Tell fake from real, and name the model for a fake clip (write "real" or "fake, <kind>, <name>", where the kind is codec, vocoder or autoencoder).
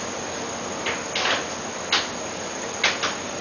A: real